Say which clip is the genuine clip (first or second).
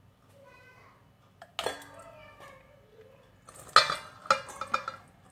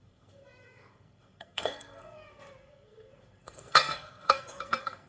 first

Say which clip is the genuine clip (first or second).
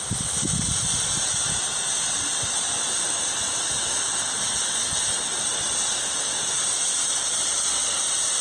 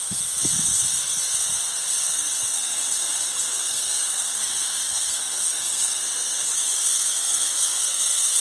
first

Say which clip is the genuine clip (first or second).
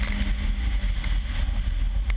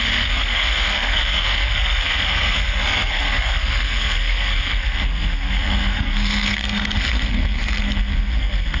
first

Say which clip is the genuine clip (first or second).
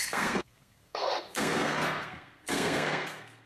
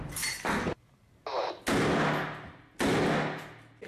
second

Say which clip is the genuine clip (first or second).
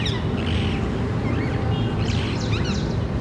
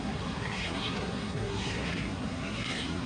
first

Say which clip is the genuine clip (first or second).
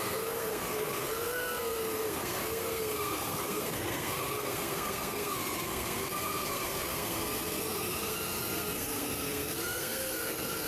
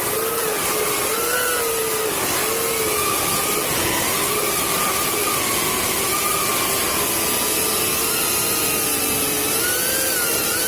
second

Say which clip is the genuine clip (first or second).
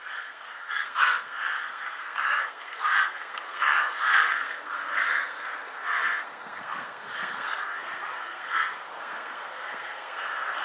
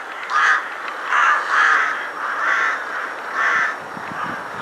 second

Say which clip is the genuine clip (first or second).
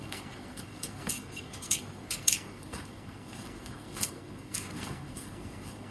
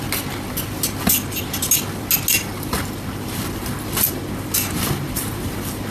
second